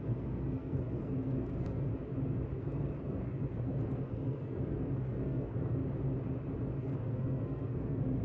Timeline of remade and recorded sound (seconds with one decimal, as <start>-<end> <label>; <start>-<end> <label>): 0.0-1.9 remade; 1.9-2.6 recorded; 2.6-5.8 remade; 5.8-6.8 recorded; 6.8-8.2 remade